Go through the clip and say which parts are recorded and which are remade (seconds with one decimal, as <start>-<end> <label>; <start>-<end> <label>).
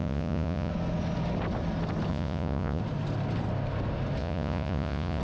0.0-0.7 remade; 0.7-2.1 recorded; 2.1-2.8 remade; 2.8-4.2 recorded; 4.2-5.2 remade